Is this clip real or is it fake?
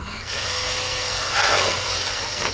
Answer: fake